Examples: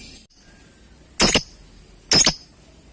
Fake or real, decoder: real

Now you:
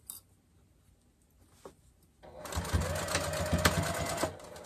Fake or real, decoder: real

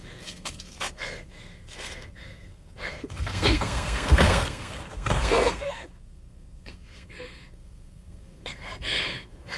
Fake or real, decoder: fake, codec, SNAC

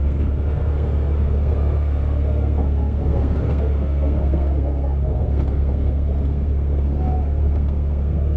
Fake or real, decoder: fake, codec, SNAC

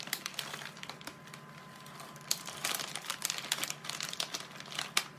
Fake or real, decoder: real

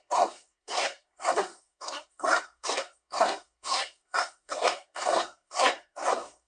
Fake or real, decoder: fake, codec, SNAC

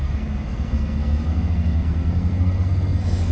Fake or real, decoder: fake, codec, SNAC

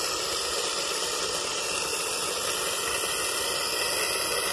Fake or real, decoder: real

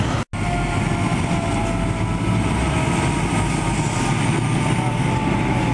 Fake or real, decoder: real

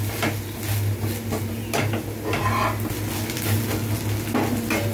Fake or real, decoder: real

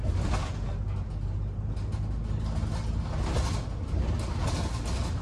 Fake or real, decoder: real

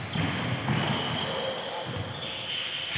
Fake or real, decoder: real